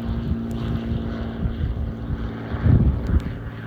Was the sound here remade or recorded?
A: recorded